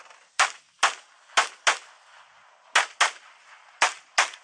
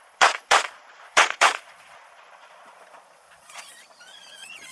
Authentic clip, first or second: first